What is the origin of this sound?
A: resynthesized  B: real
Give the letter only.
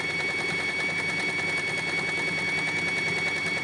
B